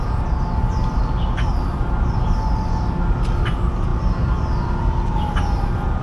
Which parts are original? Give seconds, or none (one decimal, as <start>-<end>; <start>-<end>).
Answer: 0.0-6.0